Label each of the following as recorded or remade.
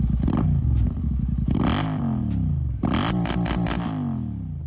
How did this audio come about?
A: recorded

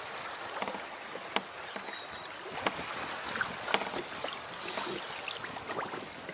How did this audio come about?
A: recorded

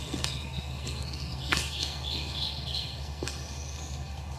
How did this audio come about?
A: remade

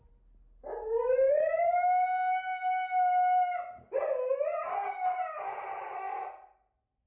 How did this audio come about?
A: recorded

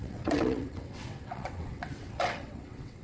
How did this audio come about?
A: remade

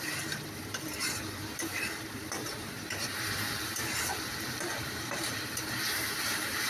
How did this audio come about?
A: remade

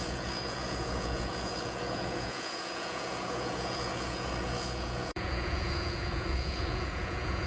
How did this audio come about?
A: remade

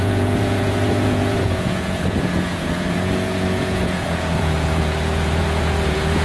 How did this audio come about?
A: remade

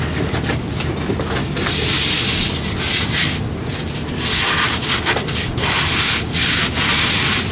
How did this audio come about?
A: recorded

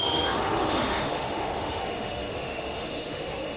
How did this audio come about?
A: remade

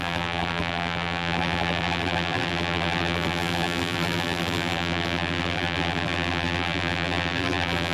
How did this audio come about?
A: remade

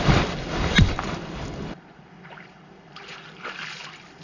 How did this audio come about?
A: remade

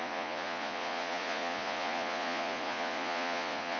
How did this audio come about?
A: remade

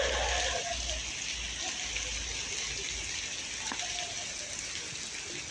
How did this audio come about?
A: recorded